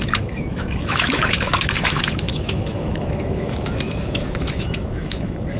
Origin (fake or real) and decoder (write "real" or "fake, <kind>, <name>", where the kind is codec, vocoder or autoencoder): fake, autoencoder, DAC-VAE